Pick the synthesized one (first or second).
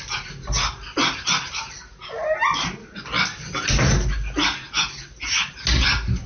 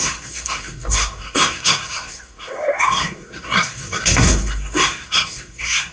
second